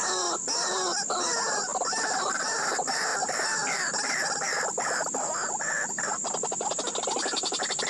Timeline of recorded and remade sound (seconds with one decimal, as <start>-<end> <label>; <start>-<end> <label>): 0.0-1.7 recorded; 1.7-2.6 remade; 2.6-7.9 recorded